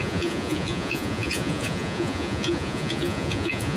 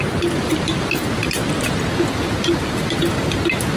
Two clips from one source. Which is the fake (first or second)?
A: first